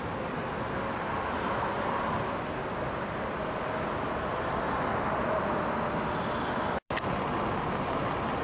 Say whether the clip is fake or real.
real